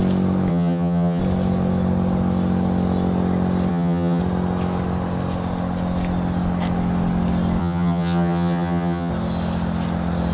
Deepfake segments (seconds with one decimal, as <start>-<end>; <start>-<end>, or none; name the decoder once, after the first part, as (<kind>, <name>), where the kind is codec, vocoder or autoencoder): 0.5-1.2 (vocoder, HiFi-GAN); 3.7-4.2; 7.6-9.1